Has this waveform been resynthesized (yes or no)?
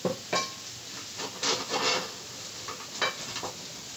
no